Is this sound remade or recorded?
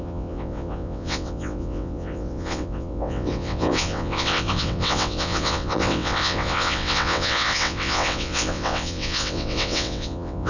remade